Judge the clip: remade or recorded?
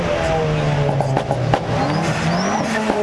recorded